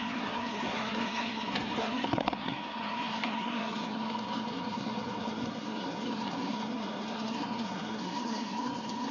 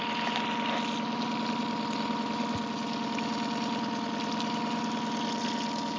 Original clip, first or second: second